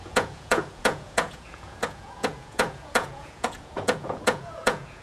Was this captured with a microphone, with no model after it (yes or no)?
no